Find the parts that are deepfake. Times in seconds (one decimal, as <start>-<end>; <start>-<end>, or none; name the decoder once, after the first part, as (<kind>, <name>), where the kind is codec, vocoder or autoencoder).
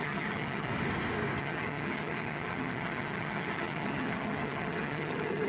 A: 0.0-0.7 (vocoder, HiFi-GAN); 1.4-5.5